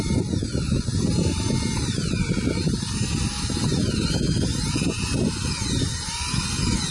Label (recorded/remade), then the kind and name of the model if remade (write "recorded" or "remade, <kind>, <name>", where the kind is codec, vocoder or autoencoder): remade, vocoder, BigVGAN v2